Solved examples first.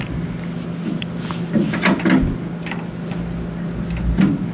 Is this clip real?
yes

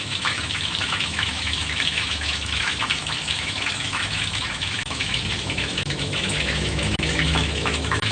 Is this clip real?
no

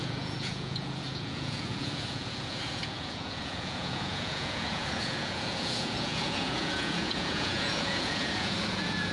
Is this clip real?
no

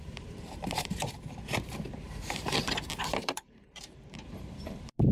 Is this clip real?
no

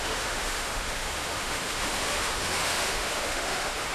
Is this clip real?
no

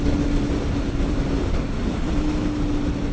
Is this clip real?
yes